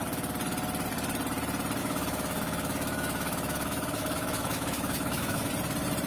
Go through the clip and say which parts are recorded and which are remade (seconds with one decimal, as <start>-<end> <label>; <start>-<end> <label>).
0.0-1.8 recorded; 1.8-5.5 remade; 5.5-6.1 recorded